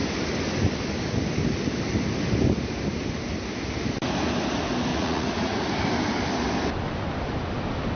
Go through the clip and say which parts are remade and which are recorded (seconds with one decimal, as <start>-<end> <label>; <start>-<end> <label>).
0.0-4.9 recorded; 4.9-5.7 remade; 5.7-8.0 recorded